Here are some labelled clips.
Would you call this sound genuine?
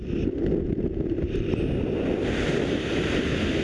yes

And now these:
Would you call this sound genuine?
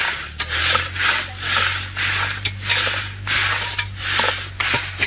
yes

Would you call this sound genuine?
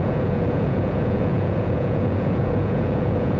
no